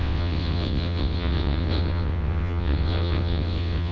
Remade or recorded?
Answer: remade